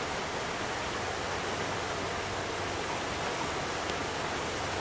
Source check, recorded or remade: recorded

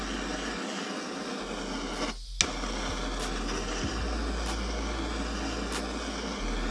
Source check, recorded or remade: recorded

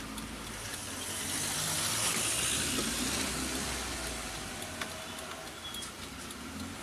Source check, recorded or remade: recorded